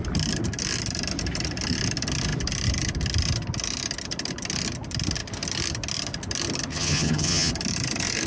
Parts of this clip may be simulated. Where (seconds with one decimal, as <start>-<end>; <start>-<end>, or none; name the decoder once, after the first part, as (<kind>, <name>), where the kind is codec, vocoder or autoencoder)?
6.7-7.5 (vocoder, HiFi-GAN)